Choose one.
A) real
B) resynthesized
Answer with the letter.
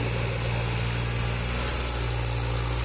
A